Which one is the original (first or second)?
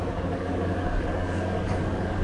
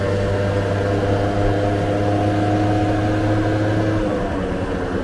second